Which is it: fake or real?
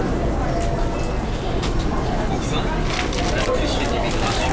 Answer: real